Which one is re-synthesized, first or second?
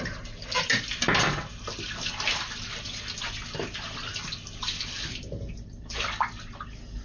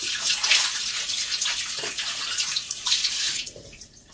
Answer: second